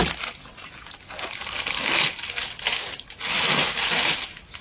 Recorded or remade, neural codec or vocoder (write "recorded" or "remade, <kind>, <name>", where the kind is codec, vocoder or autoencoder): recorded